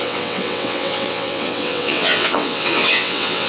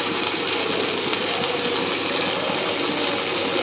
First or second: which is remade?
first